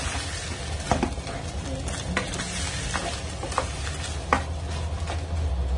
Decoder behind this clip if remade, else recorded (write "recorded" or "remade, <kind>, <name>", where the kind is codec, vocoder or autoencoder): recorded